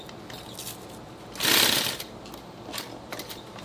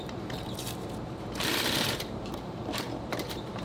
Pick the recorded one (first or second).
first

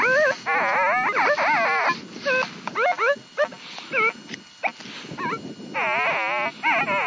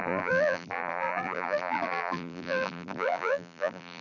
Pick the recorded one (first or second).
first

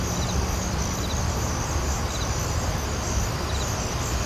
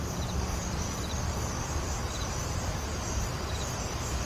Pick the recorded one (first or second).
first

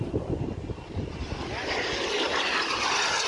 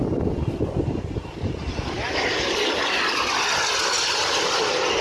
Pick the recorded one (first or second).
first